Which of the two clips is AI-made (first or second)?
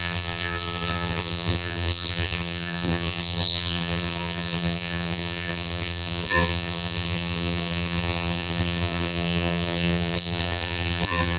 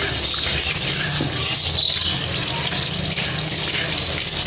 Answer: first